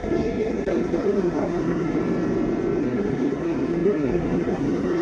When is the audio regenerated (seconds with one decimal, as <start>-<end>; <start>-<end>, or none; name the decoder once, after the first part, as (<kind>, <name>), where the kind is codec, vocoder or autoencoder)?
0.0-2.0 (codec, SNAC); 2.8-5.0